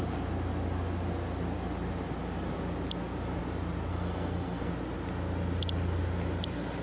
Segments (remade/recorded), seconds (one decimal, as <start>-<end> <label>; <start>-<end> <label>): 0.0-3.9 recorded; 3.9-4.7 remade; 4.7-6.8 recorded